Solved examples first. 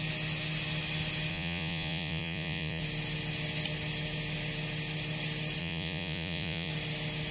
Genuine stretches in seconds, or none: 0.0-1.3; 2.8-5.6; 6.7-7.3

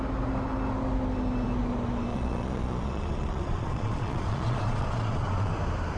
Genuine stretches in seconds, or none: 0.0-2.1; 5.5-6.0